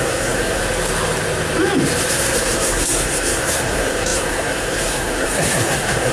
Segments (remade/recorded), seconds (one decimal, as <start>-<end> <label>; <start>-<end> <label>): 0.0-0.6 remade; 0.6-2.1 recorded; 2.1-6.1 remade